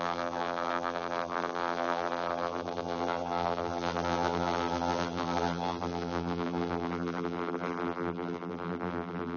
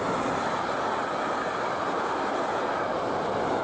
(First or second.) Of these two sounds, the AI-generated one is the first